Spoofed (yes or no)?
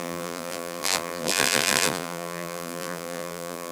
yes